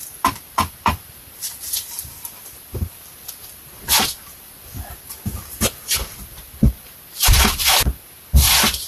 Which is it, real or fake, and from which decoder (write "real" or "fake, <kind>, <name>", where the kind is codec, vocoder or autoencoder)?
fake, vocoder, BigVGAN v2